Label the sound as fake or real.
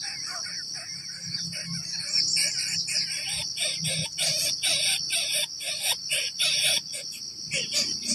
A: real